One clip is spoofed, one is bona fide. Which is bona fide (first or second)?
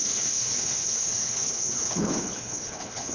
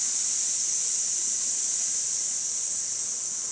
second